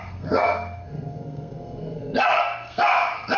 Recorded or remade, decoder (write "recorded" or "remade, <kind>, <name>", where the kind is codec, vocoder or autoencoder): remade, codec, SNAC